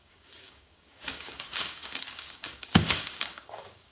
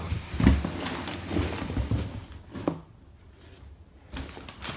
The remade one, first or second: first